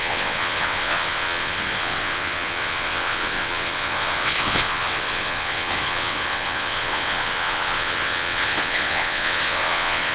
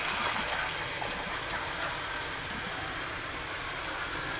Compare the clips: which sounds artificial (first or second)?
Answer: first